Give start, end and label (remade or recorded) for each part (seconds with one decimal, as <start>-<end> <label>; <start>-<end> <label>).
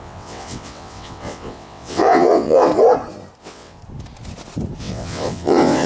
0.0-2.7 remade; 2.7-3.4 recorded; 3.4-3.8 remade; 3.8-4.8 recorded; 4.8-5.9 remade